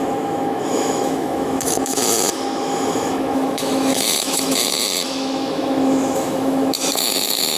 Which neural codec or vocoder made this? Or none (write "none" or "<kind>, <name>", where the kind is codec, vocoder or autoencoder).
autoencoder, DAC-VAE